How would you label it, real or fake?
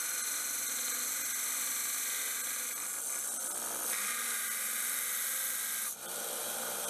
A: real